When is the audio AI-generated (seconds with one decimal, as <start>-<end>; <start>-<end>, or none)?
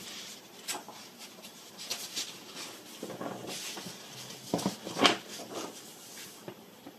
0.0-1.9; 6.1-7.0